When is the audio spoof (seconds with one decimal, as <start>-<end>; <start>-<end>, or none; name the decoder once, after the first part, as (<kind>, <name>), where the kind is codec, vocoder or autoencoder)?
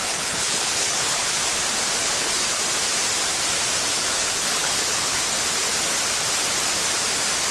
0.0-1.4 (codec, HILCodec); 2.0-2.6; 3.9-5.2